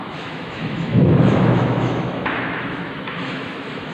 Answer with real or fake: fake